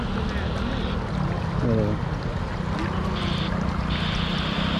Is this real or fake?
real